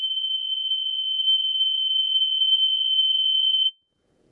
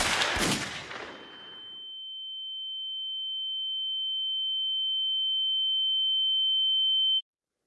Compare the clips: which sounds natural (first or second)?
second